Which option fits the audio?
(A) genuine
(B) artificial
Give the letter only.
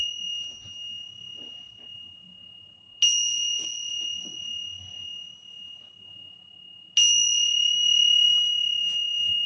A